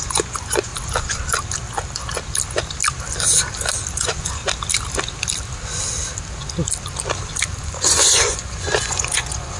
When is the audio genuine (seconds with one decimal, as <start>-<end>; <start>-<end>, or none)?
0.7-3.9; 4.4-7.6